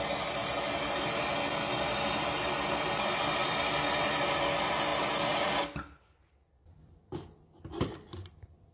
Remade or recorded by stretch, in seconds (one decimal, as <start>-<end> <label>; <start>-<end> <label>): 0.0-8.7 recorded